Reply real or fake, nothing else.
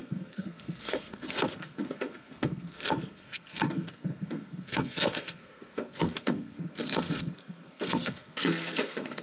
fake